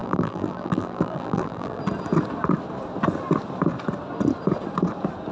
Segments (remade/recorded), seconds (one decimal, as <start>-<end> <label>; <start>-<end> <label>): 0.0-1.8 remade; 1.8-5.3 recorded